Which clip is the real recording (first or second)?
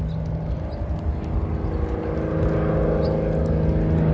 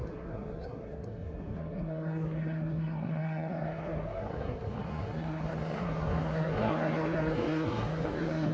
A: first